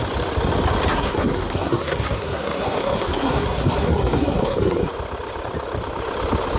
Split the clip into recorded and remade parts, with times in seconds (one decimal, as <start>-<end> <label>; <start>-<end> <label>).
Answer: 0.0-0.9 recorded; 0.9-4.9 remade; 4.9-6.6 recorded